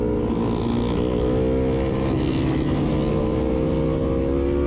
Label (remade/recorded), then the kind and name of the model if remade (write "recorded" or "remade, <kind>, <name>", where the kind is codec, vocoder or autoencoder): recorded